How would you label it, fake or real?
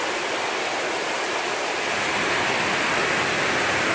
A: real